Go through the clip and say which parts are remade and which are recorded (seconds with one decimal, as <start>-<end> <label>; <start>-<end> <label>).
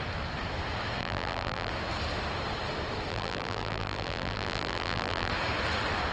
0.0-1.0 recorded; 1.0-1.7 remade; 1.7-3.1 recorded; 3.1-5.3 remade; 5.3-6.1 recorded